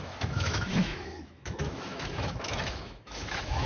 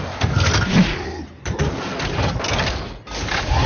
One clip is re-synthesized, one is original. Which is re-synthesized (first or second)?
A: first